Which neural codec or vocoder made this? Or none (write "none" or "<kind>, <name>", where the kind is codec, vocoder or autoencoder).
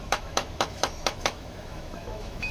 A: autoencoder, DAC-VAE